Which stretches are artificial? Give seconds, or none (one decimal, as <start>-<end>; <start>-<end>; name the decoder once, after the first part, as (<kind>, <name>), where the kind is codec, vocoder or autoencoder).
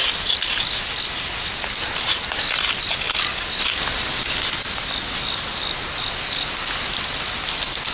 none